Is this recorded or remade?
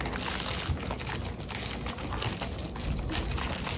recorded